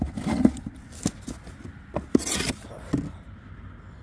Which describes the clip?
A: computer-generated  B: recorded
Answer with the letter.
B